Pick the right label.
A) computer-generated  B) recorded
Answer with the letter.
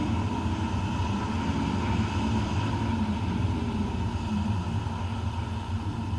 B